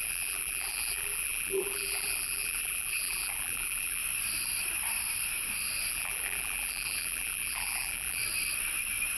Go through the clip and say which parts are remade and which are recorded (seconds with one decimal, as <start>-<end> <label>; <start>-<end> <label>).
0.0-4.0 remade; 4.0-5.9 recorded; 5.9-8.2 remade; 8.2-9.2 recorded

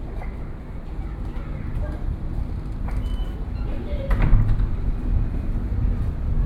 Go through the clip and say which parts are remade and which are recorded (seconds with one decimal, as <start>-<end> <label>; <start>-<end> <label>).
0.0-6.5 recorded

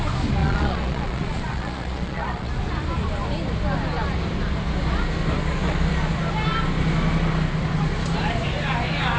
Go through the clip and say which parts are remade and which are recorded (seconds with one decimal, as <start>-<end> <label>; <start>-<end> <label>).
0.0-0.4 recorded; 0.4-2.5 remade; 2.5-9.2 recorded

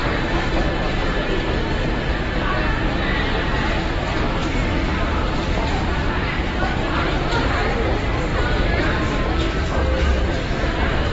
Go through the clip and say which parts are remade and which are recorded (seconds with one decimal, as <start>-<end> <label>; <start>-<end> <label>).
0.0-0.5 remade; 0.5-4.4 recorded; 4.4-7.5 remade; 7.5-8.3 recorded; 8.3-9.3 remade; 9.3-11.1 recorded